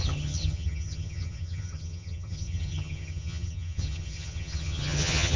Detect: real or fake fake